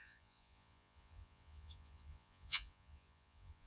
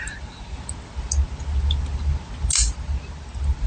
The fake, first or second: first